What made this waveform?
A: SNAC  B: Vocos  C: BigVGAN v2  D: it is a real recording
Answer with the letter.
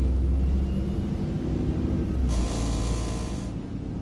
D